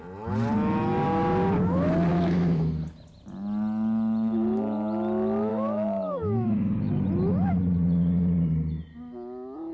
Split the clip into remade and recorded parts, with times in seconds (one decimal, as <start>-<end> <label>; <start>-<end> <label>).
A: 0.0-2.1 recorded; 2.1-2.7 remade; 2.7-5.5 recorded; 5.5-6.9 remade; 6.9-9.7 recorded